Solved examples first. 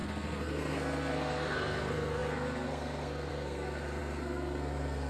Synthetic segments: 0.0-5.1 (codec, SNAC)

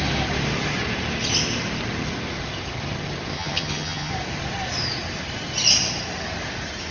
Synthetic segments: 3.3-4.1 (vocoder, HiFi-GAN)